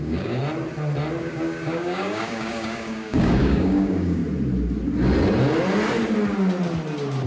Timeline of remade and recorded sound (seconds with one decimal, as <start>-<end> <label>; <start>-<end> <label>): 0.0-0.4 remade; 0.4-1.2 recorded; 1.2-4.2 remade; 4.2-7.3 recorded